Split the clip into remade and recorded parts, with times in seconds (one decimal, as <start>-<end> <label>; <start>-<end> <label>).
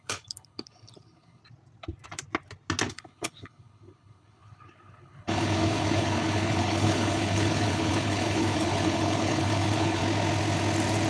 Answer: 0.0-1.4 remade; 1.4-2.9 recorded; 2.9-10.0 remade; 10.0-11.1 recorded